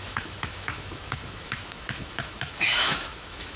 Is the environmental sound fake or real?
fake